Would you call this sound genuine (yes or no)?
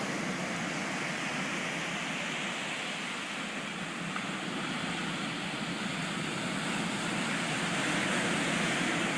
yes